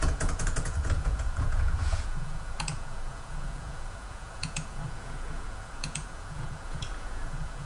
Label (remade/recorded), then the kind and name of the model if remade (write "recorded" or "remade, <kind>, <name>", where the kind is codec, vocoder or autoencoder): remade, vocoder, Vocos